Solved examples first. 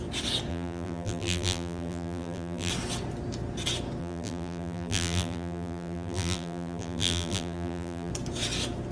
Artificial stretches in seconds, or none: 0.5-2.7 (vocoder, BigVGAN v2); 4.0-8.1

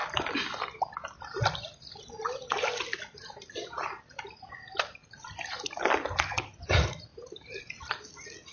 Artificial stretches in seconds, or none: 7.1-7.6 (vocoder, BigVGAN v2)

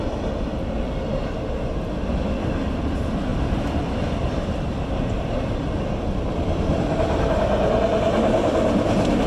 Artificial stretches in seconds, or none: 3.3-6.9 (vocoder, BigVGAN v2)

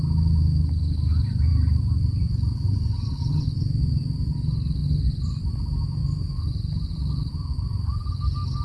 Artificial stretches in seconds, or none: 6.0-8.1 (vocoder, BigVGAN v2)

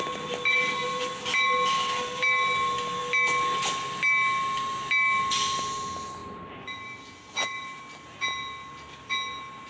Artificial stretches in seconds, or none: 6.2-7.8 (vocoder, BigVGAN v2)